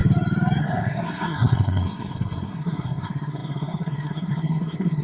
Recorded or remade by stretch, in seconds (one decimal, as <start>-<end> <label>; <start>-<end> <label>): 0.0-0.6 recorded; 0.6-5.0 remade